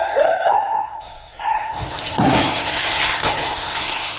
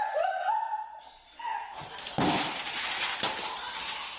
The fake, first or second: first